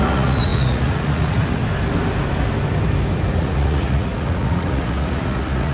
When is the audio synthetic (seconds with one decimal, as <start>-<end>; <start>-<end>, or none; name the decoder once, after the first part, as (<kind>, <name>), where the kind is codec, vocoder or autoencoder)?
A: 0.0-1.6 (vocoder, Vocos); 3.3-5.7